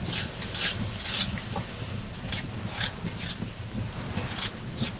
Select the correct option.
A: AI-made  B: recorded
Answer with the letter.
B